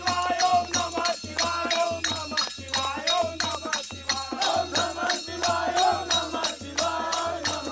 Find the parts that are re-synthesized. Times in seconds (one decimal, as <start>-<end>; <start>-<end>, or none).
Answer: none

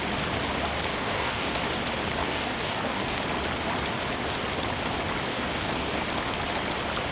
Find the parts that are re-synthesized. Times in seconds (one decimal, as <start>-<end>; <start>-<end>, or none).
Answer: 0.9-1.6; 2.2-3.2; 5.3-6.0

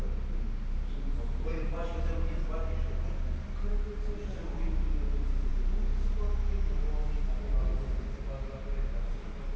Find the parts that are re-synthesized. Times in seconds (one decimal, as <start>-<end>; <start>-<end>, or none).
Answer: none

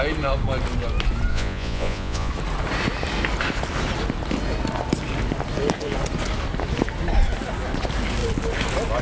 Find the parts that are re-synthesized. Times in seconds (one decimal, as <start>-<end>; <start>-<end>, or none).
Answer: 1.3-2.3